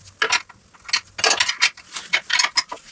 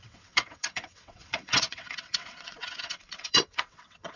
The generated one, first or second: second